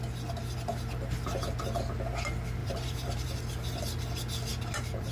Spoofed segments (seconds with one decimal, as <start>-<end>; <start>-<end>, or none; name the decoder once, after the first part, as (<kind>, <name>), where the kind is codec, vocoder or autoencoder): 2.6-3.4 (vocoder, BigVGAN v2); 4.5-5.1